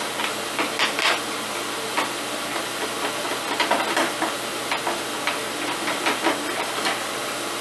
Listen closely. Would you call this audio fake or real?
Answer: real